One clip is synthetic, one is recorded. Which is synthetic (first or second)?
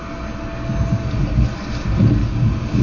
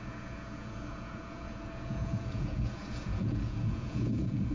second